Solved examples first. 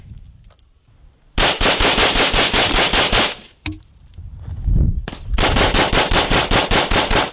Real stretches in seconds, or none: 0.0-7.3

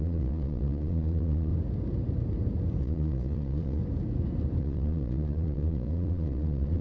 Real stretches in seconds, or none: 1.5-2.8; 3.8-4.6

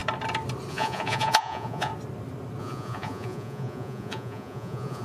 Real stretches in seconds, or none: 0.0-0.7; 1.9-2.6

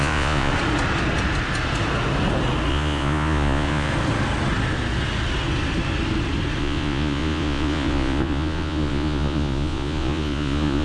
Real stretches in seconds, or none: 0.5-2.7; 3.9-6.6